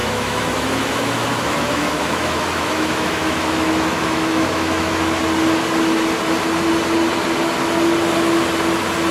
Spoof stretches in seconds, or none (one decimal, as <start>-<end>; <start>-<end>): 0.0-5.2